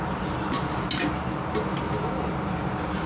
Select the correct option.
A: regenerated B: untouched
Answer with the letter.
B